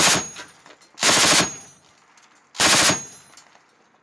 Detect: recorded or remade recorded